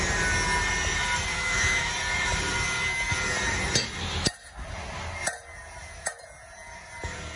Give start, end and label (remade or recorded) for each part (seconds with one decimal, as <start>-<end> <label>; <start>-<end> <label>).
0.0-1.3 recorded; 1.3-1.9 remade; 1.9-7.4 recorded